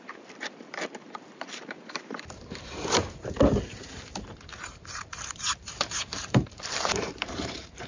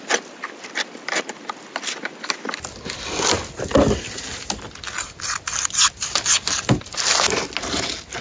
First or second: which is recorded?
second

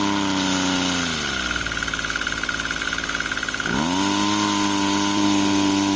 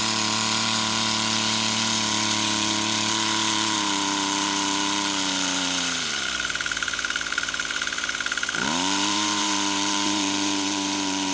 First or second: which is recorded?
first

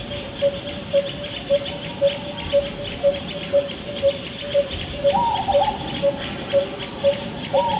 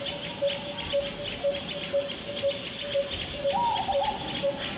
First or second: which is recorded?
second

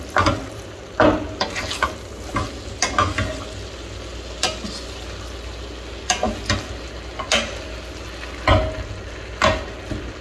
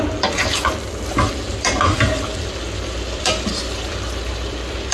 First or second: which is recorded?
first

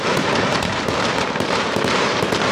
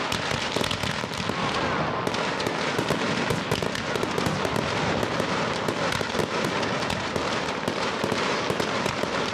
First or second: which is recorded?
second